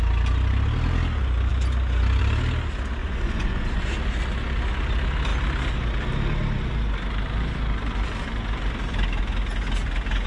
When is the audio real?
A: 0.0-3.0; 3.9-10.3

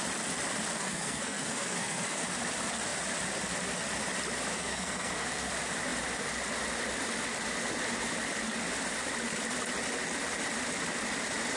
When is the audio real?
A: 0.0-0.8; 2.2-4.5; 5.5-11.6

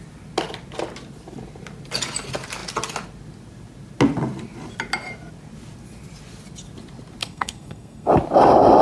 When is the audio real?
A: 0.0-7.2; 8.1-8.8

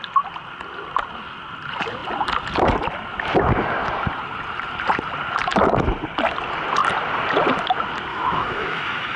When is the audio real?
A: 0.0-8.1